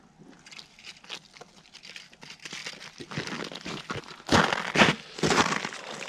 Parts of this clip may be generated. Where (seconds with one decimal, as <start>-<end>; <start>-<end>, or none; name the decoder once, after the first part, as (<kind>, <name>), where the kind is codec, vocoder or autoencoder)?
none